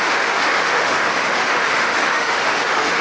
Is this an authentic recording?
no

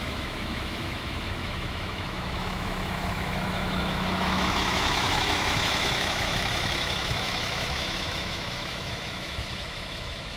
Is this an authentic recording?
no